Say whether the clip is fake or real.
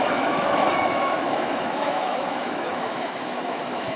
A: fake